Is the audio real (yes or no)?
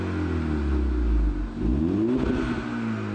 yes